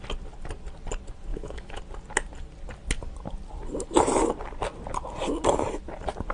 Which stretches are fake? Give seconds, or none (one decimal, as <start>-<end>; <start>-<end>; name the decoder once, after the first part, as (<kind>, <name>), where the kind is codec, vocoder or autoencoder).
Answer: 1.3-1.8 (autoencoder, DAC-VAE)